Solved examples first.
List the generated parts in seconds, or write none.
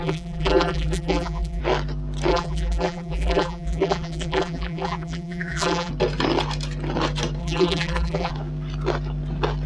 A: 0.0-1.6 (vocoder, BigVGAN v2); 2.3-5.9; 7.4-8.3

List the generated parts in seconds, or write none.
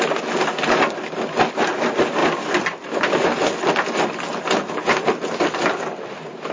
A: none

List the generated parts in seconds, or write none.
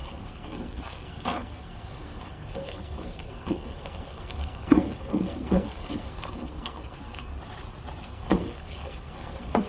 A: 0.0-7.3 (codec, SNAC); 8.0-9.7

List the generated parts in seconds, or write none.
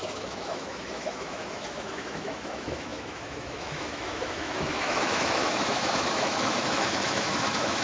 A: 0.0-7.8 (autoencoder, DAC-VAE)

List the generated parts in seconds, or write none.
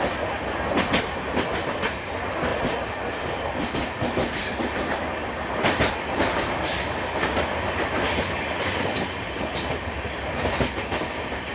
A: none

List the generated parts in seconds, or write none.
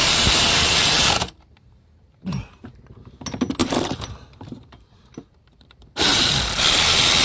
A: 0.0-3.0 (vocoder, BigVGAN v2); 3.6-6.3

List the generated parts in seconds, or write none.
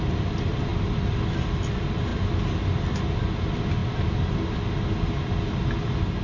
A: 0.7-1.2 (vocoder, BigVGAN v2)